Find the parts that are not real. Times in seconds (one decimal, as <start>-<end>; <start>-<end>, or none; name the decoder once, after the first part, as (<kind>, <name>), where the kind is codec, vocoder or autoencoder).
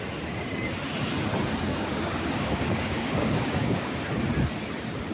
1.7-4.0 (codec, DAC)